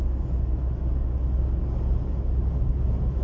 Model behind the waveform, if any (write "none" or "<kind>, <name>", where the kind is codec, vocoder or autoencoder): none